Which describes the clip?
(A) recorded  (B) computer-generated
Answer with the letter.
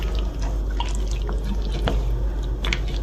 A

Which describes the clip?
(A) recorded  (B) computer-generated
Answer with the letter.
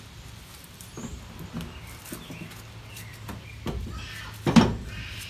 A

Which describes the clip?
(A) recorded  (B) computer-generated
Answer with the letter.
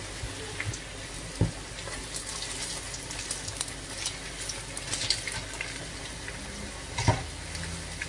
A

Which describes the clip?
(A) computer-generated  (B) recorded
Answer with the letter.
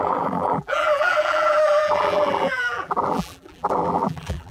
A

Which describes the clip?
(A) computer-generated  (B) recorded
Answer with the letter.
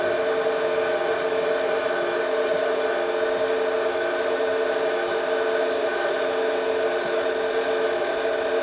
B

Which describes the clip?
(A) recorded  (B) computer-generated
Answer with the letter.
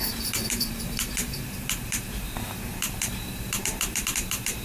B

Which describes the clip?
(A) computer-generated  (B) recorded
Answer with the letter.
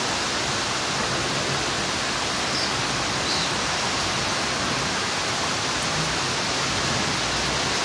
B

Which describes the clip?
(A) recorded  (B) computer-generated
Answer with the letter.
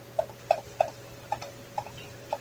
A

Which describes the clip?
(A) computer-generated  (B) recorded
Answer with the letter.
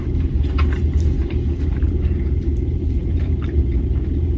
A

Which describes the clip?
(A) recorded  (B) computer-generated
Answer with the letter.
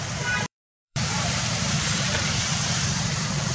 B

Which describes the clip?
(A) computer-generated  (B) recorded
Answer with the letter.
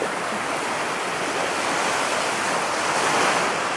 B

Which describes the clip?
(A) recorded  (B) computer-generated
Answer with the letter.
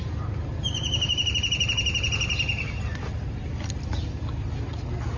A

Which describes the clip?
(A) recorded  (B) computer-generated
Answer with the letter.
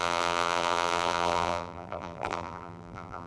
B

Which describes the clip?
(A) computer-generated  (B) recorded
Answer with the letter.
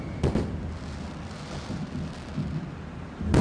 A